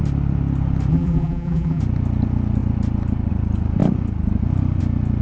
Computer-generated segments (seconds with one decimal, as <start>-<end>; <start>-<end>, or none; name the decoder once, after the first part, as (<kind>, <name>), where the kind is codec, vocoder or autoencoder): 0.9-1.8 (vocoder, BigVGAN v2)